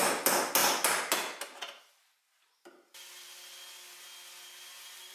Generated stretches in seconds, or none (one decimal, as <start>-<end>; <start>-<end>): none